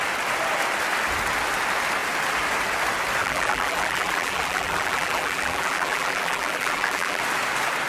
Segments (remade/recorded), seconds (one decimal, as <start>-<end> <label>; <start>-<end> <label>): 0.0-3.2 recorded; 3.2-7.2 remade; 7.2-7.9 recorded